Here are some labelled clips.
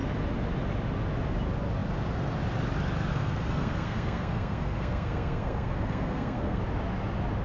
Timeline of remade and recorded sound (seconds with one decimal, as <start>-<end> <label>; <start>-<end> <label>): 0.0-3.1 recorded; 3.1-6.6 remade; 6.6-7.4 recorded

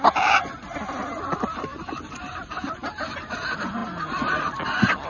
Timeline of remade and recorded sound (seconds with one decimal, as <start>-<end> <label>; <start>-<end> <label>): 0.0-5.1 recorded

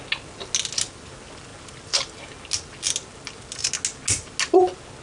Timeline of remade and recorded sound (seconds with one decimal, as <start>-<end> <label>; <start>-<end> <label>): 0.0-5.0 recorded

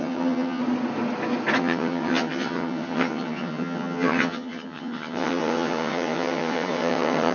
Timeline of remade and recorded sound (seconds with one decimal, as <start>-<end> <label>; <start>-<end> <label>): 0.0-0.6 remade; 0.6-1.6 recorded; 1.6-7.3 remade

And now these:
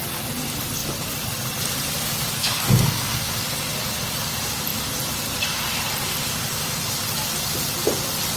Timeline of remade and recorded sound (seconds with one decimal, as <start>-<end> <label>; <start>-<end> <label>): 0.0-2.4 recorded; 2.4-3.3 remade; 3.3-8.4 recorded

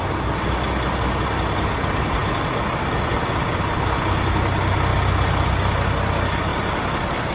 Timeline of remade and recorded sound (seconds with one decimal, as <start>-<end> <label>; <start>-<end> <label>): 0.0-7.3 recorded

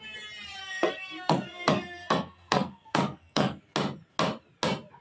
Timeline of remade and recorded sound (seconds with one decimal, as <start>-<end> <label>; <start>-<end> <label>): 0.0-0.6 recorded; 0.6-3.6 remade; 3.6-5.0 recorded

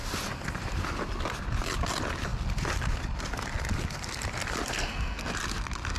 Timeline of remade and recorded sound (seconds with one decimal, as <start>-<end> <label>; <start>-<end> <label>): 0.0-4.7 recorded; 4.7-5.3 remade; 5.3-6.0 recorded